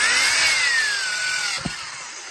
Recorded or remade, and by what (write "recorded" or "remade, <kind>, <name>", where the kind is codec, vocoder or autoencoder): recorded